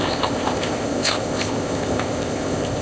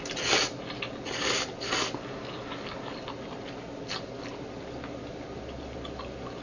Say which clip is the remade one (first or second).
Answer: first